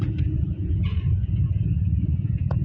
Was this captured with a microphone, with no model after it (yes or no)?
no